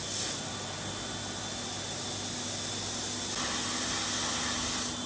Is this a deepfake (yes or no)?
no